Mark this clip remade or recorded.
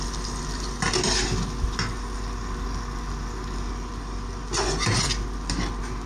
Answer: remade